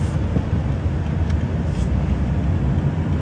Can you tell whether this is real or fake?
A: real